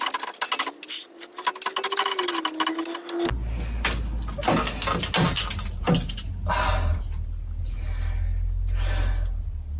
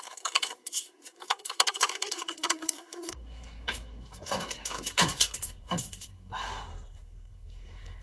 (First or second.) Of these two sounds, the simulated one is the second